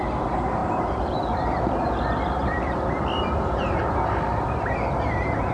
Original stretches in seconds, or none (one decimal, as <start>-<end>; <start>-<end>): 0.0-0.6; 3.9-5.5